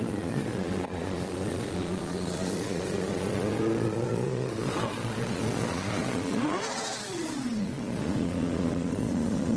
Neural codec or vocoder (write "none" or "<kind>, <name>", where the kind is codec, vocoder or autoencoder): vocoder, Vocos